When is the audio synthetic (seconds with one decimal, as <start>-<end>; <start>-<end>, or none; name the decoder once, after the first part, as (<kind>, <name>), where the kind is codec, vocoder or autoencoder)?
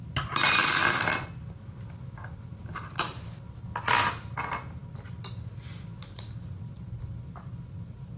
none